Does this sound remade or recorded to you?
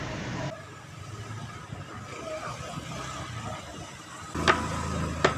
recorded